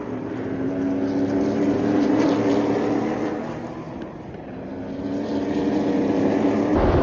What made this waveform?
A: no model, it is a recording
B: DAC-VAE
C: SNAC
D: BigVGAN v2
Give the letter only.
A